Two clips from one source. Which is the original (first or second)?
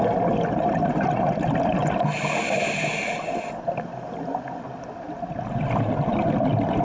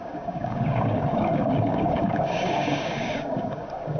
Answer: first